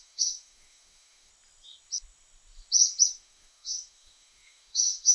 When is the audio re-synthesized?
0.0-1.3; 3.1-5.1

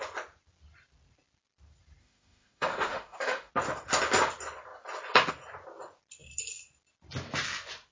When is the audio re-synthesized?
2.0-3.5

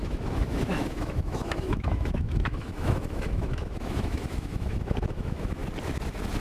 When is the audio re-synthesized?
0.0-5.6